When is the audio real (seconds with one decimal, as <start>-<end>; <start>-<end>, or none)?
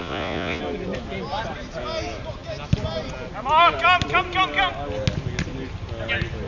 0.6-6.5